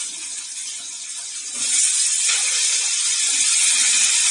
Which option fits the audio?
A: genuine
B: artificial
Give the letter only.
B